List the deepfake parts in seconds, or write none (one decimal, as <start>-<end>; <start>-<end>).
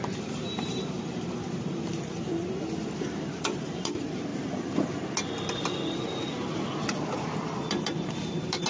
0.0-2.3; 2.9-4.3; 7.7-8.7